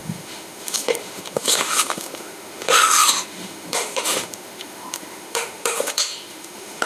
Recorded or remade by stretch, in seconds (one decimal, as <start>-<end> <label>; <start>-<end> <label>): 0.0-6.9 remade